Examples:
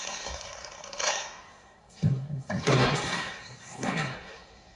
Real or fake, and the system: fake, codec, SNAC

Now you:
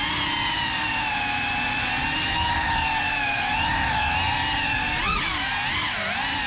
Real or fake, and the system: real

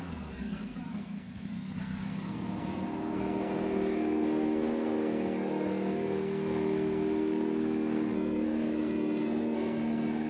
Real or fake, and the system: fake, codec, SNAC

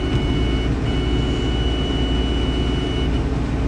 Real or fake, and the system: real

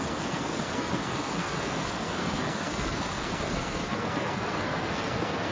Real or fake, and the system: fake, codec, SNAC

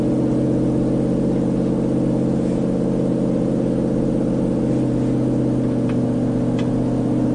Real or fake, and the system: real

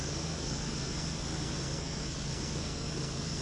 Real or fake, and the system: fake, codec, SNAC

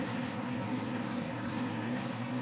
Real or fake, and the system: fake, codec, SNAC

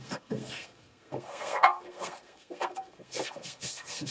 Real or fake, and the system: fake, codec, SNAC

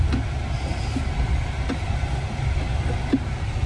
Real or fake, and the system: real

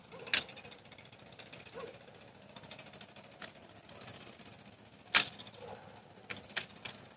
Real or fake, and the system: real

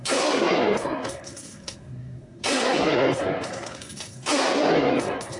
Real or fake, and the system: fake, codec, SNAC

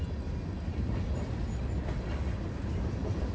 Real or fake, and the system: real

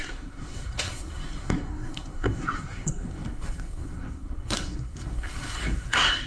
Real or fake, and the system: fake, codec, SNAC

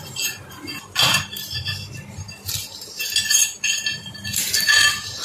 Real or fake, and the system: real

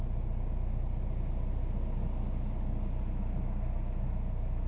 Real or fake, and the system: real